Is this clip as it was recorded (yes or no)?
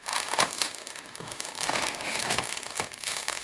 no